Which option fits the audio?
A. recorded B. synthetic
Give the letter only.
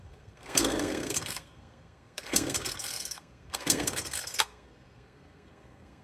B